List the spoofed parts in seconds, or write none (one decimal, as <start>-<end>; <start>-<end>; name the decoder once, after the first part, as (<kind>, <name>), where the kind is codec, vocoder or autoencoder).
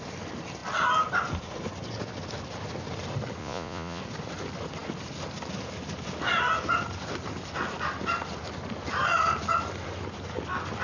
3.4-4.0 (vocoder, Vocos)